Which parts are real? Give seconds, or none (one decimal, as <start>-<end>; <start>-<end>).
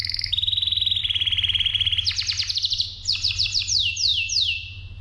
0.0-5.0